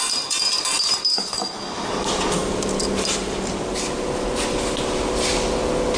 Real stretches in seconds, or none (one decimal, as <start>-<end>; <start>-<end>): 0.0-1.1; 1.9-6.0